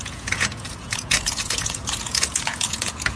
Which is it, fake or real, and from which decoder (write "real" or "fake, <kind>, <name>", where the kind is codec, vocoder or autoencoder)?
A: fake, vocoder, Vocos